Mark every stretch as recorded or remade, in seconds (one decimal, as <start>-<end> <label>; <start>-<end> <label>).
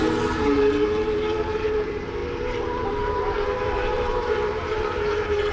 0.0-5.5 remade